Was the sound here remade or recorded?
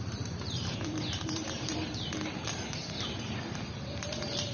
remade